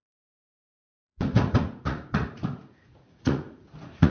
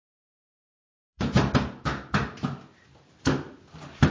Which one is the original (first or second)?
second